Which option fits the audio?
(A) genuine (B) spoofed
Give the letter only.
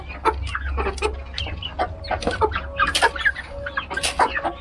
A